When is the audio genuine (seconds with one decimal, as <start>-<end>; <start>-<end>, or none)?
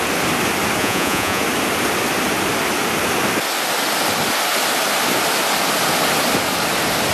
0.0-0.8; 1.4-7.1